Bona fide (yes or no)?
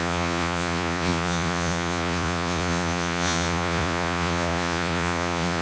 no